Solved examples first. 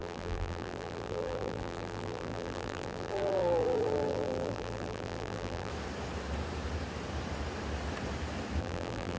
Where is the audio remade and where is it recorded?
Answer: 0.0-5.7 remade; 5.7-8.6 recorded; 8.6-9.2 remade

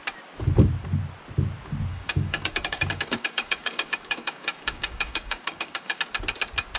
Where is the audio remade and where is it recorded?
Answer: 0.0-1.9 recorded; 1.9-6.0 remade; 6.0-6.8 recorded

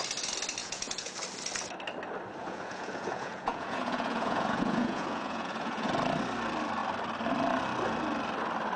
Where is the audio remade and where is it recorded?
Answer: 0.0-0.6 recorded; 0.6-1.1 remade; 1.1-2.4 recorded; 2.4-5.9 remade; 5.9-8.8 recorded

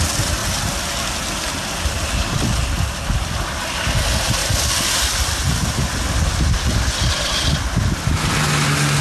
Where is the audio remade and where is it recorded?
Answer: 0.0-9.0 recorded

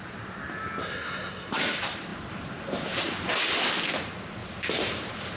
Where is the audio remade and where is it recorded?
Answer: 0.0-0.8 recorded; 0.8-1.5 remade; 1.5-5.4 recorded